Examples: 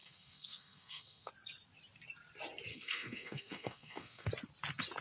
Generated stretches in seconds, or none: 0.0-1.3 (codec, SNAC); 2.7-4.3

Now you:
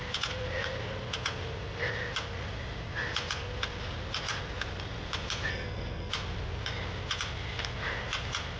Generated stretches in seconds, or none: 5.5-6.1 (codec, SNAC)

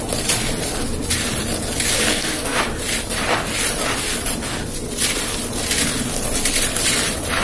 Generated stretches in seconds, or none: 2.1-2.6 (codec, SNAC)

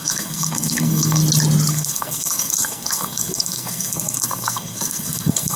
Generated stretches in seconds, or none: 0.0-1.2 (codec, SNAC); 1.7-5.6

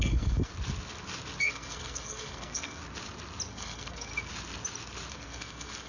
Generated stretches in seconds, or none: 0.0-0.5 (codec, SNAC); 1.4-2.8; 3.5-4.1; 5.1-5.9

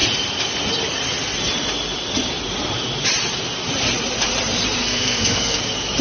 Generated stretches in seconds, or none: 4.8-5.6 (codec, SNAC)